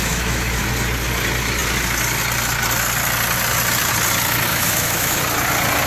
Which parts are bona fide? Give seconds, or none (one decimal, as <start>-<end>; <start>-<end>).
0.6-4.5; 5.2-5.9